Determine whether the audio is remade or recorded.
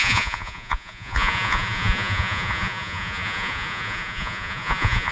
remade